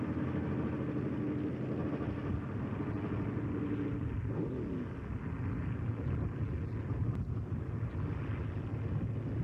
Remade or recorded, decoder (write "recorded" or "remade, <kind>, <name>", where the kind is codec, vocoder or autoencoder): recorded